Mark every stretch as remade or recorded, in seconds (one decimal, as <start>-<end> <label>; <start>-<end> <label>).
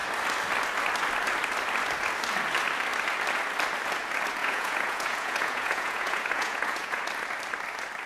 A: 0.0-4.4 recorded; 4.4-7.0 remade; 7.0-8.1 recorded